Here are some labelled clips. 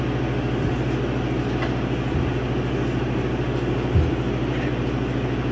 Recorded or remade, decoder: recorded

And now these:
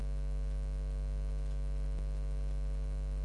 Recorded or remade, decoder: recorded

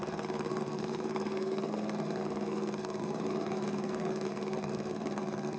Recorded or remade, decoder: remade, codec, SNAC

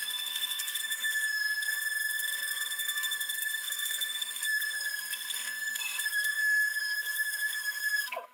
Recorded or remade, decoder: remade, codec, SNAC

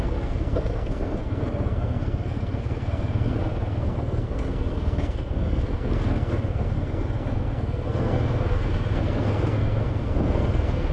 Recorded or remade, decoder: remade, codec, SNAC